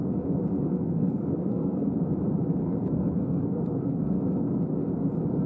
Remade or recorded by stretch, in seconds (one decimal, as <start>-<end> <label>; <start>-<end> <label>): 0.0-0.5 recorded; 0.5-1.9 remade; 1.9-2.6 recorded; 2.6-4.2 remade; 4.2-5.5 recorded